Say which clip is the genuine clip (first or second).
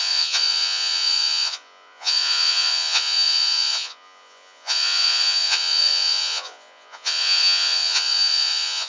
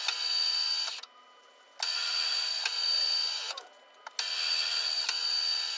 second